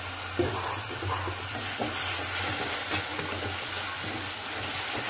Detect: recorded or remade recorded